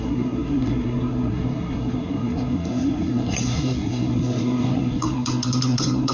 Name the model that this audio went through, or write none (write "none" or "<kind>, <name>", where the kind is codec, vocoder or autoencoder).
codec, SNAC